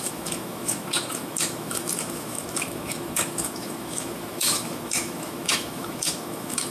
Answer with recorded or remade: remade